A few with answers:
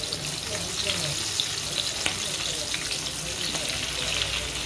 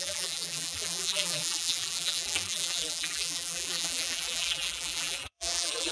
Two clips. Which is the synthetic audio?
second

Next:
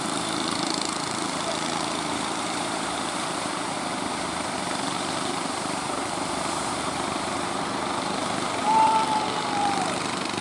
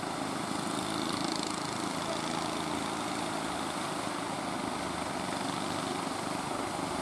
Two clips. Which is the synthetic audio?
first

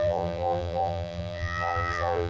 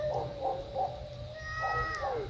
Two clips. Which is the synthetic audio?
first